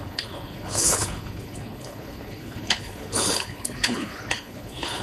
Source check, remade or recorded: remade